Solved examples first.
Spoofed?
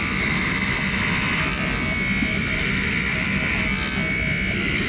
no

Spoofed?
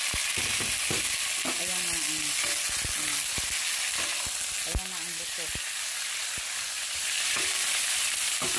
no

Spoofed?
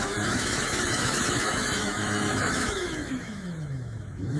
yes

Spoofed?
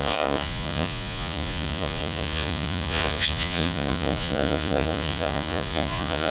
yes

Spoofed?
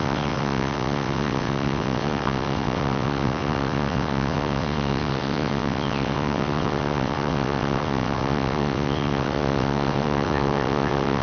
yes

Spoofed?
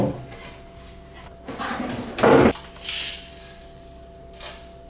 no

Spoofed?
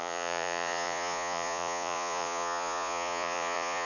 yes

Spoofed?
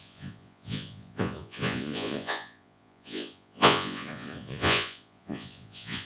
yes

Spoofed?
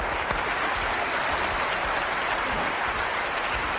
no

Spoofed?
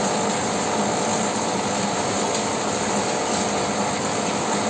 no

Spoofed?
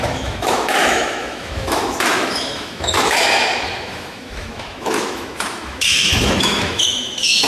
yes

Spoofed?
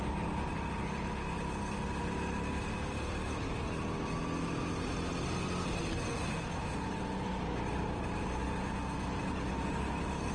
no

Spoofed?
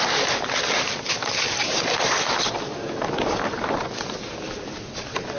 no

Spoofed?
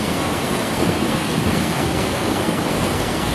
yes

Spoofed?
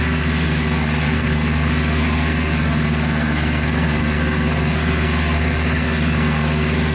yes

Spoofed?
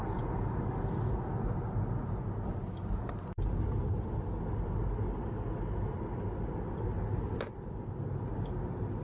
no